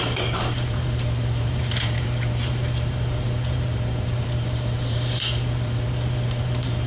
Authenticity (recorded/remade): remade